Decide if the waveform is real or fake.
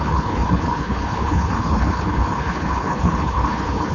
fake